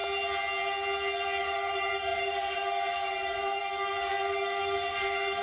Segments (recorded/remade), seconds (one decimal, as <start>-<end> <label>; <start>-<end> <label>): 0.0-1.4 recorded; 1.4-5.4 remade